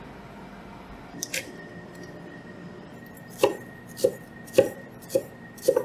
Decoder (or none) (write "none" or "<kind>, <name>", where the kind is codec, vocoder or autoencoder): vocoder, BigVGAN v2